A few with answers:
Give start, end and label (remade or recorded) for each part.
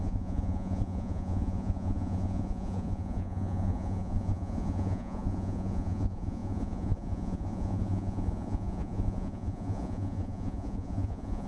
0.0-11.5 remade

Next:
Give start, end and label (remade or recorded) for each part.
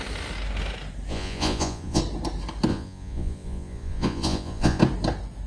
0.0-1.1 recorded; 1.1-2.0 remade; 2.0-2.7 recorded; 2.7-4.8 remade; 4.8-5.5 recorded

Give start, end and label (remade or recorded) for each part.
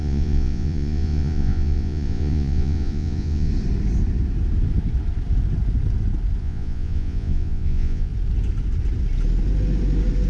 0.0-3.5 remade; 3.5-6.4 recorded; 6.4-8.1 remade; 8.1-10.3 recorded